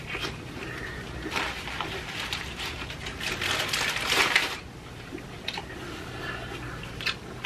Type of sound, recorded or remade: recorded